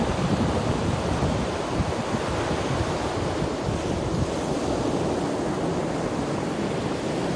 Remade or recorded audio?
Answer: recorded